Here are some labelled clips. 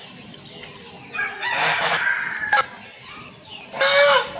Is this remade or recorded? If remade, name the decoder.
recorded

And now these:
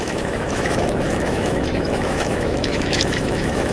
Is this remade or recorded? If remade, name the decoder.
remade, autoencoder, DAC-VAE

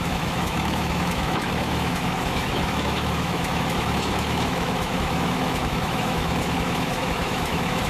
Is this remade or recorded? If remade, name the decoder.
remade, autoencoder, DAC-VAE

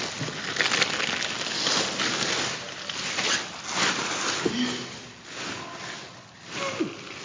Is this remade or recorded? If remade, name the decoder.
recorded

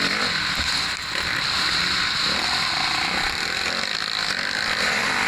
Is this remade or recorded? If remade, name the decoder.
recorded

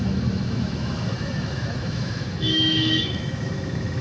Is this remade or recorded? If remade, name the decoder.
remade, autoencoder, DAC-VAE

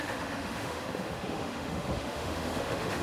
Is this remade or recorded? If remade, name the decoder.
remade, autoencoder, DAC-VAE